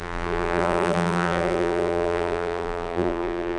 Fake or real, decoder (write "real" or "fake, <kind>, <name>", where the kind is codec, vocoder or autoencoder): fake, vocoder, BigVGAN v2